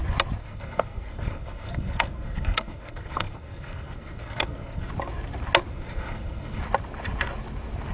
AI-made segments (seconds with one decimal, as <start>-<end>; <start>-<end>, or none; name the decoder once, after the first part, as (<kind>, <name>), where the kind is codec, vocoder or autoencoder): 0.4-4.9 (codec, SNAC); 5.7-6.6